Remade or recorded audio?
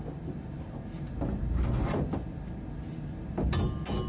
recorded